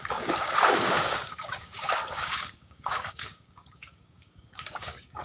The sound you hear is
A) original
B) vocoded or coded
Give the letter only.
B